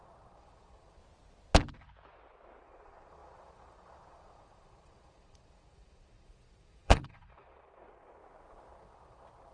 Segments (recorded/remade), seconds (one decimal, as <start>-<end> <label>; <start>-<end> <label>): 0.0-1.0 remade; 1.0-2.6 recorded; 2.6-8.2 remade; 8.2-8.7 recorded; 8.7-9.5 remade